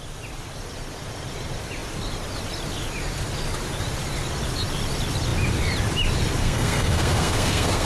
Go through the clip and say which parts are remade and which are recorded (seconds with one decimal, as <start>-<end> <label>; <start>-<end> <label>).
0.0-6.4 recorded; 6.4-7.9 remade

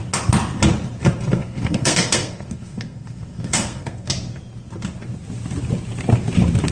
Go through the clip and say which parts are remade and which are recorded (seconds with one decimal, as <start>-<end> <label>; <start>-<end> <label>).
0.0-1.3 recorded; 1.3-4.1 remade; 4.1-6.7 recorded

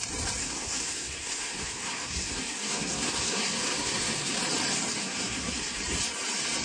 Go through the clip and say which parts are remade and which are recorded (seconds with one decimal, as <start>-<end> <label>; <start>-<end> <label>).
0.0-0.4 recorded; 0.4-4.4 remade; 4.4-5.0 recorded; 5.0-5.8 remade; 5.8-6.6 recorded

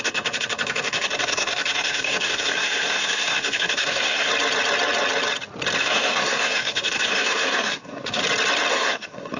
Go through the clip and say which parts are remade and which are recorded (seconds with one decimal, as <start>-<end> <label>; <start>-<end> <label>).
0.0-4.3 remade; 4.3-5.8 recorded; 5.8-8.2 remade; 8.2-8.7 recorded; 8.7-9.4 remade